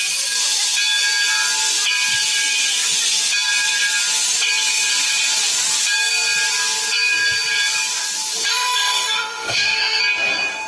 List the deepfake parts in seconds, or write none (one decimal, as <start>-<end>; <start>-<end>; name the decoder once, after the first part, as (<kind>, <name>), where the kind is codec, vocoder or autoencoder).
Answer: 8.4-10.0 (autoencoder, DAC-VAE)